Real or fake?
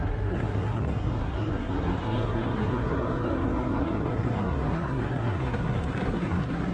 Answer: fake